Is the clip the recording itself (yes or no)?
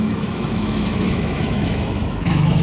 no